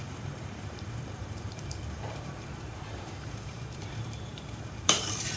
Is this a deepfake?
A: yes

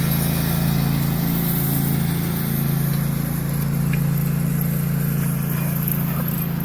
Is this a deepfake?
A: no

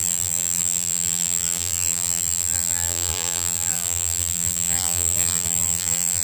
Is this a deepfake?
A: yes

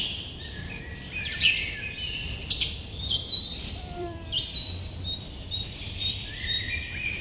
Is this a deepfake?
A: yes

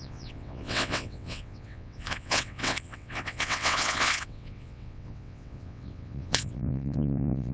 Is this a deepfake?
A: yes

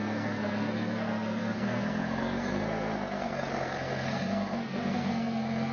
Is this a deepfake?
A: yes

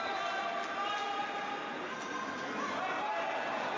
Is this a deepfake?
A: no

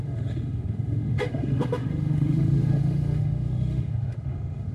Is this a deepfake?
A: yes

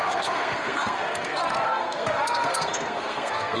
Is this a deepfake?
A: yes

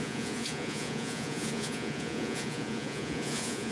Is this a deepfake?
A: yes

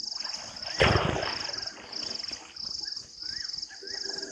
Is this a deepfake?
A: no